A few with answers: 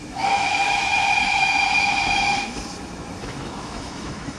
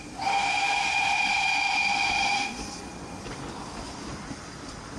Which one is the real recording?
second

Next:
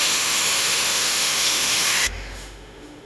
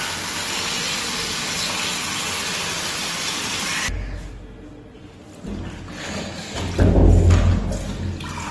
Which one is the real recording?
second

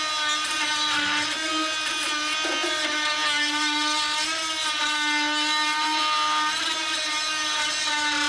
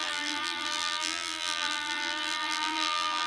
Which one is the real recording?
first